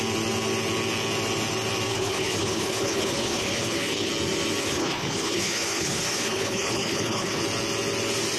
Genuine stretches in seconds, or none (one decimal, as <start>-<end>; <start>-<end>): 0.0-1.9; 4.1-4.6; 7.4-8.4